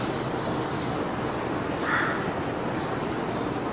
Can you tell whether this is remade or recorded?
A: recorded